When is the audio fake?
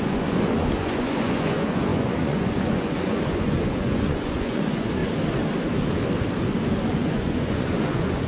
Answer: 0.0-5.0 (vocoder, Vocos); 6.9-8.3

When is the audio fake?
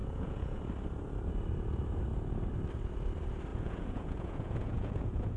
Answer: 0.0-0.6 (vocoder, Vocos); 3.5-5.4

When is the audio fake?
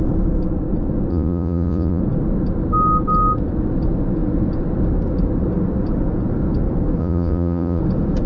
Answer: 1.1-2.0 (vocoder, Vocos); 7.0-7.8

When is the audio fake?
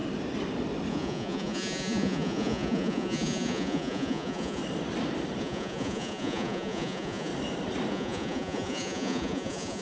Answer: 0.9-4.6 (vocoder, Vocos); 5.4-7.3; 7.9-9.8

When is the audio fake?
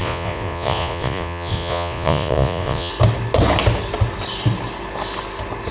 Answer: 0.0-2.9 (vocoder, Vocos)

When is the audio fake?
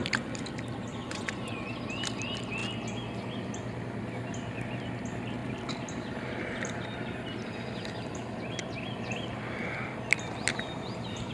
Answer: 1.0-1.6 (vocoder, Vocos)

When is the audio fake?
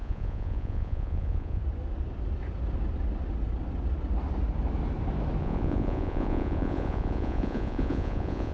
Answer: 0.0-1.6 (vocoder, Vocos); 5.4-8.5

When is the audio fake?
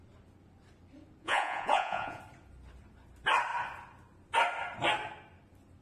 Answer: 1.2-2.2 (vocoder, Vocos)